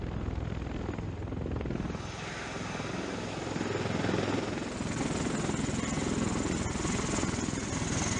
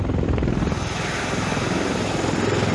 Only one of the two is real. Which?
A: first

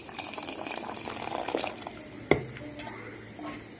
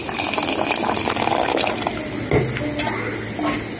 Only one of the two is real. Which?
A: second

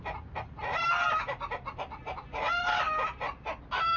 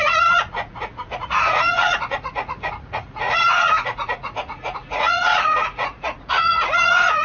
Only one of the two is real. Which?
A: first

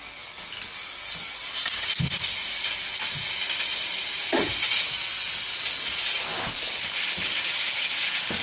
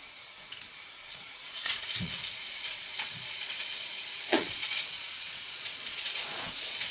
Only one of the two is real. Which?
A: first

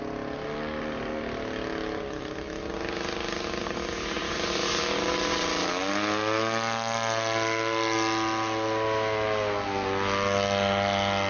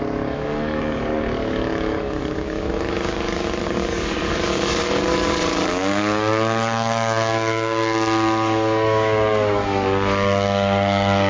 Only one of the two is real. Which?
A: first